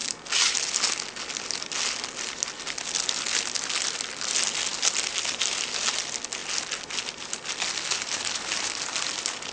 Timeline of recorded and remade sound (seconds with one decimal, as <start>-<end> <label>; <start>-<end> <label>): 0.0-9.5 recorded